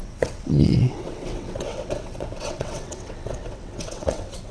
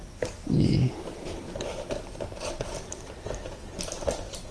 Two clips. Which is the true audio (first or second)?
second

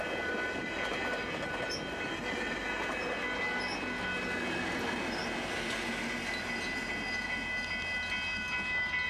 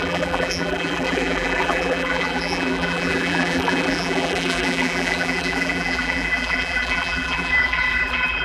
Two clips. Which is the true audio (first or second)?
first